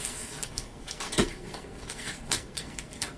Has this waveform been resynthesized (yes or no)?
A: yes